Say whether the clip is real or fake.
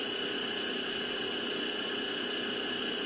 real